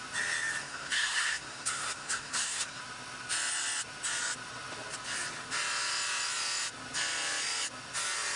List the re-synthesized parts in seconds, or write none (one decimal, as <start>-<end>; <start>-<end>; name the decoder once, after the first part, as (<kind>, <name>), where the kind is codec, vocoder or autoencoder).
0.6-2.8 (codec, SNAC)